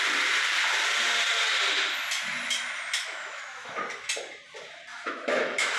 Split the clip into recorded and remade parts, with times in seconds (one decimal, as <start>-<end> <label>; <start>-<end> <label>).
0.0-3.0 recorded; 3.0-3.8 remade; 3.8-4.9 recorded; 4.9-5.8 remade